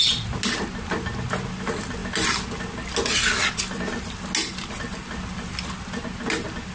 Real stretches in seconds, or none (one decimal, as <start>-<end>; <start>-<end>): 0.0-6.7